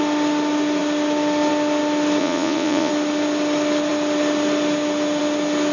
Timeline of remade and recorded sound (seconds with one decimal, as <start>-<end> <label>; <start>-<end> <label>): 0.0-2.2 recorded; 2.2-2.9 remade; 2.9-5.7 recorded